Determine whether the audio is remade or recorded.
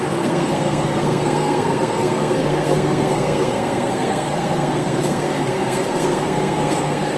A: remade